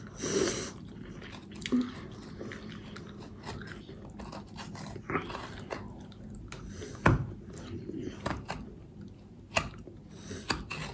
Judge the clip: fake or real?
real